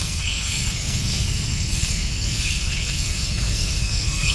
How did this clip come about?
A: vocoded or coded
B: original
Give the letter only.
A